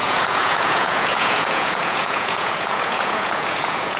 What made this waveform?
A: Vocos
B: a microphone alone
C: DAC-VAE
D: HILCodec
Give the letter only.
A